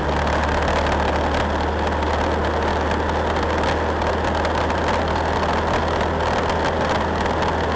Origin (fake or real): real